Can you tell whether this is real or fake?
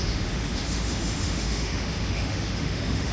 fake